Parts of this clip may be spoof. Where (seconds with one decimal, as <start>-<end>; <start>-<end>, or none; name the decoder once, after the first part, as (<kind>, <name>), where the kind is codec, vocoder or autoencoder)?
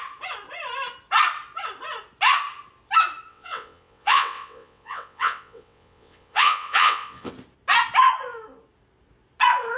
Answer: 3.3-7.3 (vocoder, WaveNeXt)